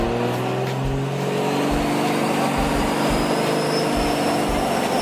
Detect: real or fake real